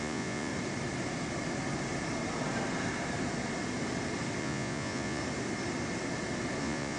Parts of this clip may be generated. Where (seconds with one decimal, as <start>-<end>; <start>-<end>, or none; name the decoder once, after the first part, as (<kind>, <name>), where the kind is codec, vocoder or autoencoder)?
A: 0.0-0.5 (vocoder, Vocos); 4.4-5.2; 6.6-7.0